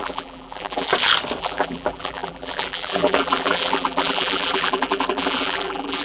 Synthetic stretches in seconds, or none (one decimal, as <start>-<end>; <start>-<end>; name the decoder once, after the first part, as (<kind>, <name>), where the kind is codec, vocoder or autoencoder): 0.0-0.9 (vocoder, BigVGAN v2); 1.4-6.0